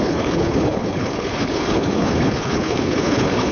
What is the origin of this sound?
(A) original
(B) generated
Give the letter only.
B